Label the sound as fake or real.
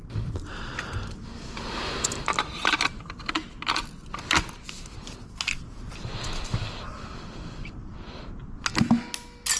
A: real